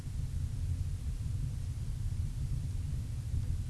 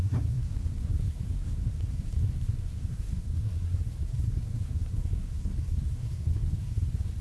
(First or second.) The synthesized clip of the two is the second